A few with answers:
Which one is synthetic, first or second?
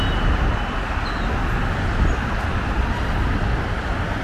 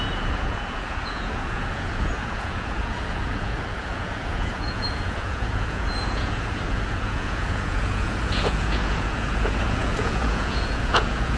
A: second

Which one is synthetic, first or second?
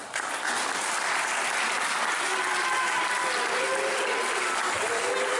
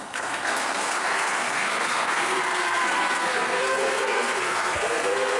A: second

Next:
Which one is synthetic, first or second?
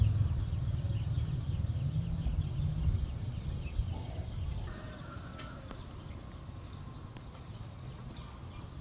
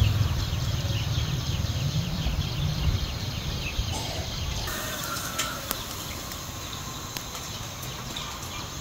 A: second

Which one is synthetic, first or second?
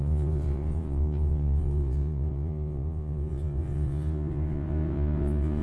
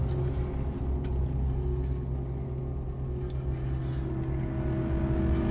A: first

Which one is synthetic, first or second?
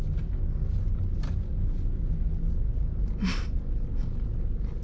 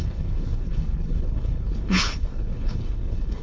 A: second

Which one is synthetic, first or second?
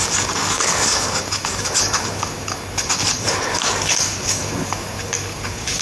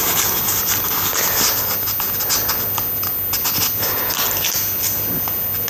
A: first